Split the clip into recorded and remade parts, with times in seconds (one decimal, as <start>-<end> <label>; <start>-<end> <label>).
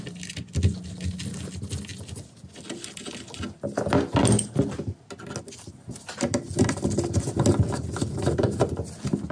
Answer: 0.0-9.3 recorded